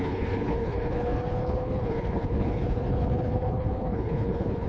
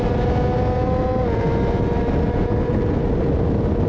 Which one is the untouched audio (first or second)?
second